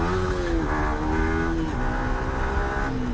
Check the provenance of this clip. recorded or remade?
recorded